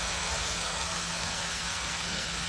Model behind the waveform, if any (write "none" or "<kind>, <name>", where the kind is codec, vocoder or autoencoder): codec, SNAC